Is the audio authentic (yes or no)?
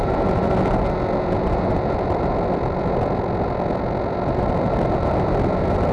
yes